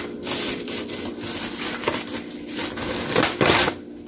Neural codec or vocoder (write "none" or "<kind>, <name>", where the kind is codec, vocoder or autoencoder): none